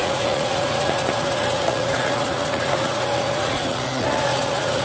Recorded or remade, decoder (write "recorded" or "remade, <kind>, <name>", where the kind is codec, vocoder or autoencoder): remade, vocoder, Vocos